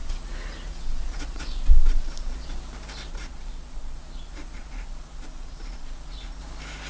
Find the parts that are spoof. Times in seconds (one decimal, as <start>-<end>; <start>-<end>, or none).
0.0-2.6; 3.1-6.4